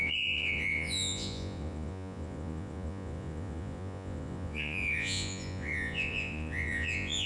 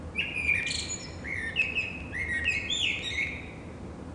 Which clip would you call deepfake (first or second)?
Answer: first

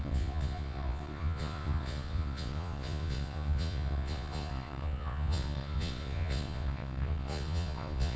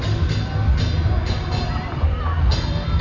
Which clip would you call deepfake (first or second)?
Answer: first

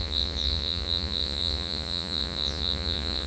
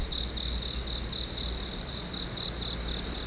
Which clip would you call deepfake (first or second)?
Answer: first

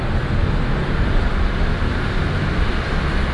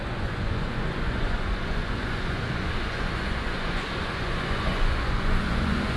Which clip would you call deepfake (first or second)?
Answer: second